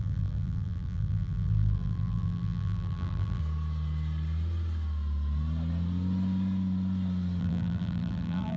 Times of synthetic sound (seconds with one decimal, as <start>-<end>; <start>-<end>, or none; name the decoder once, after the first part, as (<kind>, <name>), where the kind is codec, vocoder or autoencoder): 0.0-3.4 (vocoder, BigVGAN v2); 7.4-8.6